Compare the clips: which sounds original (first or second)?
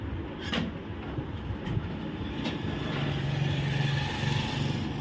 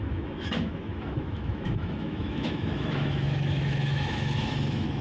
first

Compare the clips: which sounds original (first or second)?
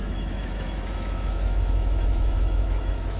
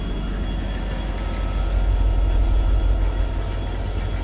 second